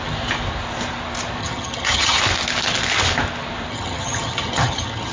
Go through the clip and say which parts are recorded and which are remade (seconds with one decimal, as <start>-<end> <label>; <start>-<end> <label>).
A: 0.0-1.4 recorded; 1.4-2.2 remade; 2.2-3.7 recorded; 3.7-5.1 remade